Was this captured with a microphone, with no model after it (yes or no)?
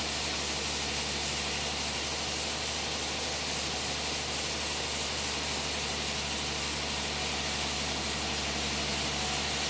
yes